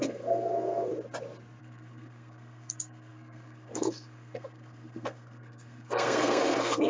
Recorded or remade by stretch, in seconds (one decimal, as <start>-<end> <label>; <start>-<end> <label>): 0.0-0.9 remade; 0.9-1.6 recorded; 1.6-6.9 remade